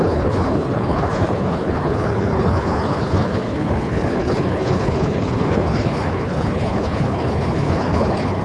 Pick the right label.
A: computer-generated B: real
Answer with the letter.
A